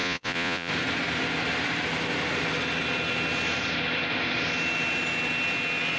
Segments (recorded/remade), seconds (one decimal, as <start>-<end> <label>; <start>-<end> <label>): 0.0-0.7 remade; 0.7-6.0 recorded